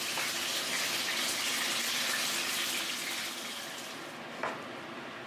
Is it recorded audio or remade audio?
recorded